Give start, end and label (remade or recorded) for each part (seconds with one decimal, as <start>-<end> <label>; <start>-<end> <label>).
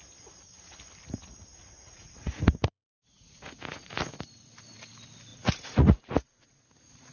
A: 0.0-1.5 recorded; 1.5-4.2 remade; 4.2-5.3 recorded; 5.3-6.6 remade; 6.6-7.1 recorded